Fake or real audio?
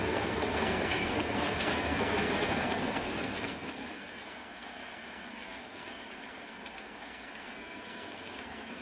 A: fake